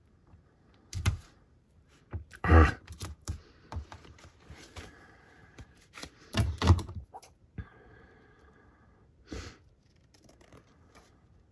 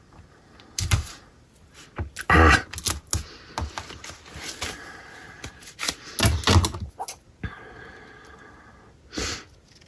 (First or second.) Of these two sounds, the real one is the second